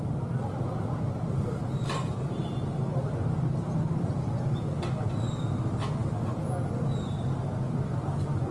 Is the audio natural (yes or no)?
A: yes